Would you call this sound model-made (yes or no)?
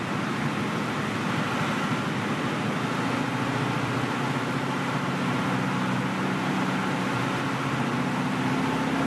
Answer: no